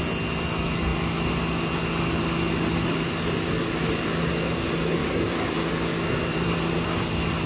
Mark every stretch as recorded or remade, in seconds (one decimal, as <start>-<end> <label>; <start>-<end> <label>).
0.0-5.0 recorded; 5.0-5.7 remade; 5.7-6.3 recorded; 6.3-7.5 remade